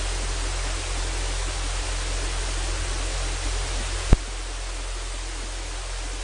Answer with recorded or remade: recorded